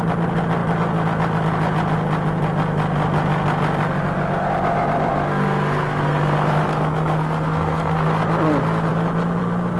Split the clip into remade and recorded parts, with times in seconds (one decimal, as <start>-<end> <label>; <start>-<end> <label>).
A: 0.0-5.1 recorded; 5.1-8.1 remade; 8.1-9.8 recorded